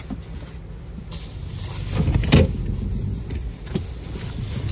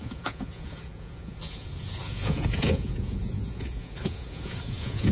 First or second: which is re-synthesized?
second